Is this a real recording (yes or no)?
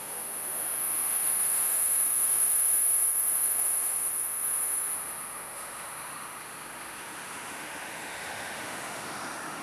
no